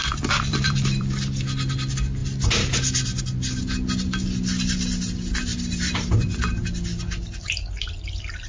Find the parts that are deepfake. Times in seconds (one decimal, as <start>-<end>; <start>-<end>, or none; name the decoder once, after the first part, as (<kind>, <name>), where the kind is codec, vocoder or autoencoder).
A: 0.0-1.1 (vocoder, BigVGAN v2); 5.5-6.4